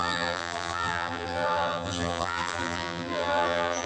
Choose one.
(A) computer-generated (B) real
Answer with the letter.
A